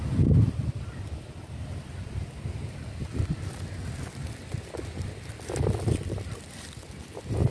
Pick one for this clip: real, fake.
real